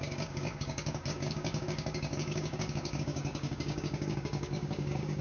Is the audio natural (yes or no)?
no